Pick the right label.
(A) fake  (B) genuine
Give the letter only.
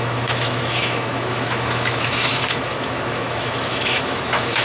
A